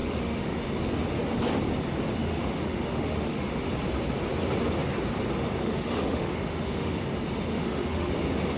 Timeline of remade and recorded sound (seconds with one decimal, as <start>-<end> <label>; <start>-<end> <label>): 0.0-0.6 remade; 0.6-2.2 recorded; 2.2-3.7 remade; 3.7-5.6 recorded; 5.6-7.0 remade; 7.0-7.5 recorded; 7.5-8.1 remade; 8.1-8.6 recorded